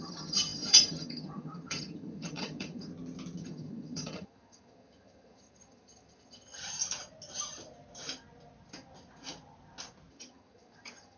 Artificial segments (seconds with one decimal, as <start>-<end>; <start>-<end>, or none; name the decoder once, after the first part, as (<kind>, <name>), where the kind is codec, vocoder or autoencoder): 0.0-2.9 (vocoder, HiFi-GAN); 3.4-6.6; 10.1-11.2